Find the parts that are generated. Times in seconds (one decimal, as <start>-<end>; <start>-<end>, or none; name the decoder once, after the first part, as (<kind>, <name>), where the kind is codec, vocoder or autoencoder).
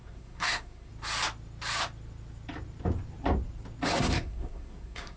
0.0-0.9 (codec, SNAC); 4.0-5.2